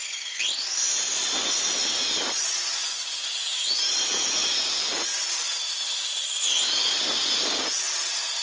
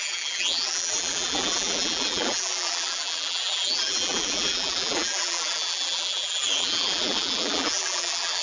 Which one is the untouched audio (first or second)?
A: first